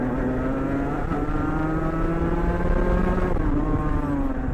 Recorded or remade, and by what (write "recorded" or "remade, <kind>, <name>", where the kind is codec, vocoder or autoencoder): recorded